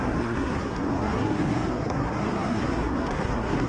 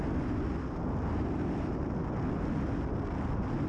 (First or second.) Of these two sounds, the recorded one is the second